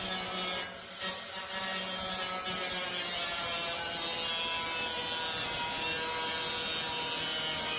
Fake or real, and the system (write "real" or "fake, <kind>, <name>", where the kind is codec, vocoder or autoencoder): real